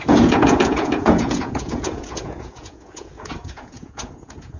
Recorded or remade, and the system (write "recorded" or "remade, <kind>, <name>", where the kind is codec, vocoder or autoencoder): remade, vocoder, Vocos